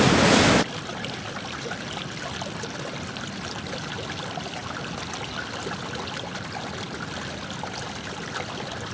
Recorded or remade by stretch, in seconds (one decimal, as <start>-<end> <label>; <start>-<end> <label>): 0.0-8.9 recorded